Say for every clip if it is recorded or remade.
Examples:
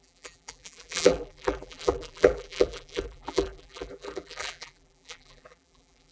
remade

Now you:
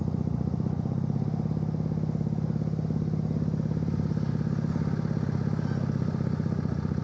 recorded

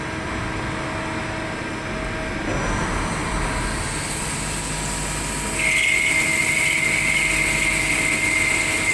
recorded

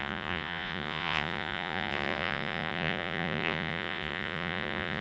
remade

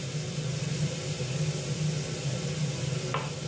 recorded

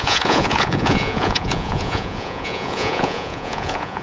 remade